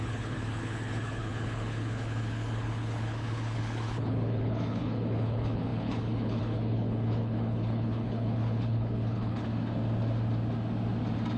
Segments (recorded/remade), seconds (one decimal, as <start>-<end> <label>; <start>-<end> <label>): 0.0-9.5 remade; 9.5-11.4 recorded